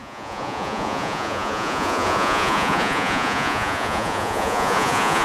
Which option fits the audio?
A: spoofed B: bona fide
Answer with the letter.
A